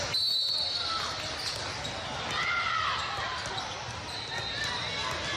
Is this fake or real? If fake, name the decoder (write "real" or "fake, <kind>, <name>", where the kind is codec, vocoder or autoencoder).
real